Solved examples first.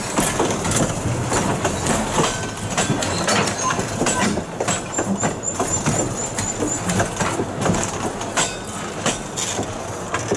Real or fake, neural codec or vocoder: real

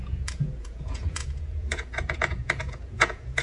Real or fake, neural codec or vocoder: fake, vocoder, Vocos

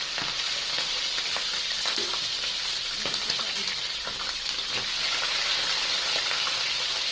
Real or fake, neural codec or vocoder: real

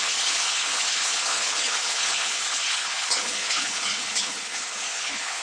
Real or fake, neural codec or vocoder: fake, codec, HILCodec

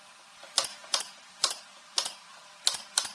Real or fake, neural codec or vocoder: fake, vocoder, BigVGAN v2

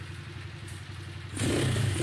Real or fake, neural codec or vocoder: real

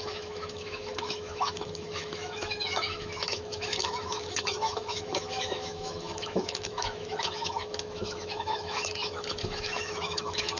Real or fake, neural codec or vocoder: fake, autoencoder, DAC-VAE